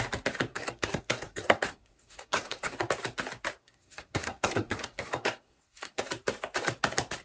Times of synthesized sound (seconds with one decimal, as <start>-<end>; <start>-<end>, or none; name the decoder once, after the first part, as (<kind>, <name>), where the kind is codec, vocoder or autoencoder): 0.5-2.7 (codec, SNAC); 3.6-6.0